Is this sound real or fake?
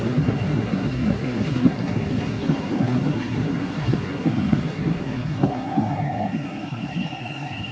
fake